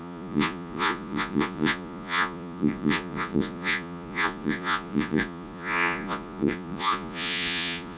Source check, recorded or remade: remade